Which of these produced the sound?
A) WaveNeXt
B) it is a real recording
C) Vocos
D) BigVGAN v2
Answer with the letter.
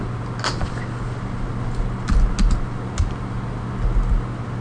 B